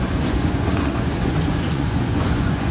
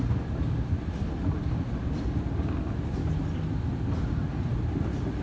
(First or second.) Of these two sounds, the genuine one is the second